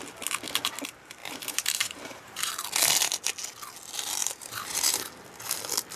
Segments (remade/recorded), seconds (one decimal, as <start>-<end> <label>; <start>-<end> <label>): 0.0-1.2 recorded; 1.2-2.5 remade; 2.5-4.2 recorded; 4.2-5.1 remade; 5.1-6.0 recorded